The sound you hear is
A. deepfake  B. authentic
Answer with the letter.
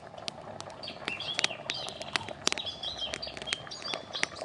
B